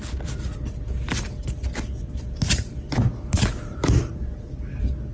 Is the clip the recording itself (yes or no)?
yes